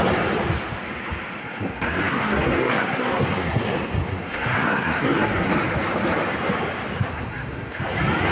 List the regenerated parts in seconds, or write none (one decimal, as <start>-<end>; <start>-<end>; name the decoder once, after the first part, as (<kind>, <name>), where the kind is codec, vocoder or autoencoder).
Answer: 1.4-5.5 (codec, SNAC); 7.1-7.8